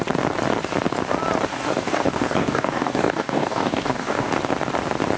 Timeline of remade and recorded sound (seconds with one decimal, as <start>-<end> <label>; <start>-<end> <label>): 0.0-1.5 recorded; 1.5-4.3 remade; 4.3-5.2 recorded